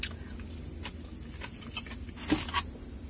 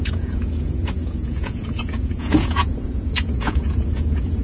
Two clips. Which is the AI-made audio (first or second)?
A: second